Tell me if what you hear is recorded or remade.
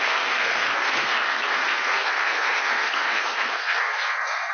remade